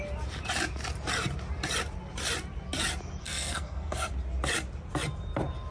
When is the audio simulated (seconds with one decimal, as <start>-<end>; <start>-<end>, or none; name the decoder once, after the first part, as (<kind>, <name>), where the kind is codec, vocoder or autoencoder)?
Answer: 3.2-4.1 (codec, SNAC)